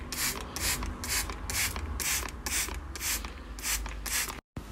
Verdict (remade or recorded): recorded